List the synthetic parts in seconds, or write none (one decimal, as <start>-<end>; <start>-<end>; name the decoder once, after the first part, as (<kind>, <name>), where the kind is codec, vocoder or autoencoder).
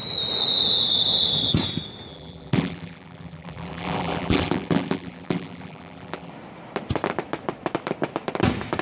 2.1-6.3 (vocoder, BigVGAN v2)